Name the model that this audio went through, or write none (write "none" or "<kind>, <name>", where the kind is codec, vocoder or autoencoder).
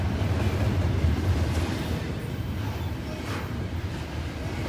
none